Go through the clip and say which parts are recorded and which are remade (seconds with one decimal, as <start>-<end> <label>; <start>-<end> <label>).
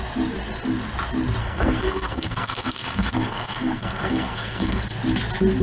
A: 0.0-1.4 recorded; 1.4-4.8 remade; 4.8-5.6 recorded